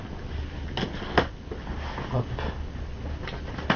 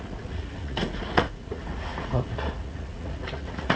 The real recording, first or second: first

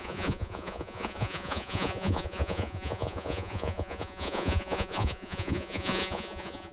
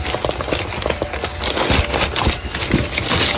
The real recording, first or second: second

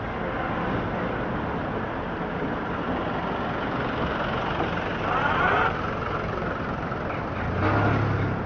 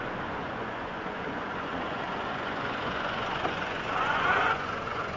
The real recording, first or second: first